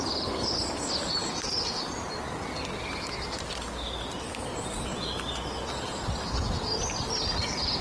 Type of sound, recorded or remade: recorded